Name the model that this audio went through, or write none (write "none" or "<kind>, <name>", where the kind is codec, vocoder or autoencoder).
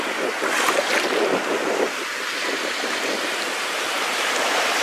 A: none